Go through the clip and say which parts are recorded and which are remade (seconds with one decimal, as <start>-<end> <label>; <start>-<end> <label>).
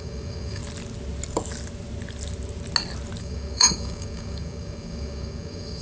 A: 0.0-0.6 remade; 0.6-3.2 recorded; 3.2-5.8 remade